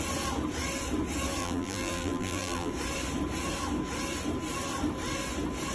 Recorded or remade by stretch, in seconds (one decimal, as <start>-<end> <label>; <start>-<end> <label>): 0.0-1.4 recorded; 1.4-2.7 remade; 2.7-5.7 recorded

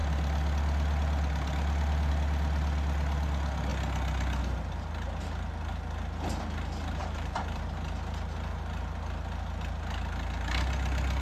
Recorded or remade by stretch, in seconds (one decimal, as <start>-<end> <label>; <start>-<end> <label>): 0.0-7.0 recorded; 7.0-7.6 remade; 7.6-11.2 recorded

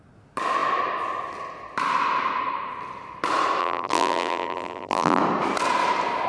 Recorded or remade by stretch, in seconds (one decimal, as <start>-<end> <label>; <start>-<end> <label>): 0.0-3.6 recorded; 3.6-5.2 remade; 5.2-6.3 recorded

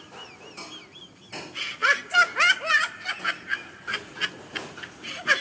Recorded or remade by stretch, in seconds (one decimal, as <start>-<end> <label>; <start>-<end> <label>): 0.0-5.4 recorded

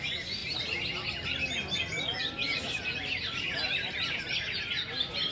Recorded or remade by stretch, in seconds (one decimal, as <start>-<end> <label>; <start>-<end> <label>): 0.0-5.3 recorded

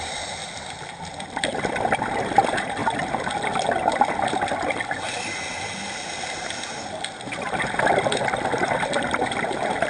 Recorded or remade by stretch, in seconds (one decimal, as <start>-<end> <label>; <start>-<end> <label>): 0.0-0.4 remade; 0.4-1.1 recorded; 1.1-2.8 remade; 2.8-7.8 recorded; 7.8-9.9 remade